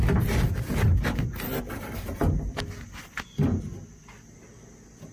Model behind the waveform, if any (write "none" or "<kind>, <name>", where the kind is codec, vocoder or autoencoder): none